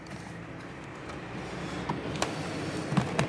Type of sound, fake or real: real